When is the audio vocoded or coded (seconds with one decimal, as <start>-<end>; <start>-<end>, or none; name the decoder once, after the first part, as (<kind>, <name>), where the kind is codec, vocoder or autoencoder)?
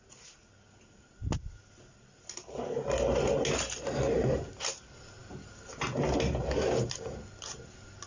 none